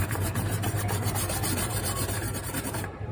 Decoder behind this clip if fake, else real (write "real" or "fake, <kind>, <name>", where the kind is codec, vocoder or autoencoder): fake, vocoder, BigVGAN v2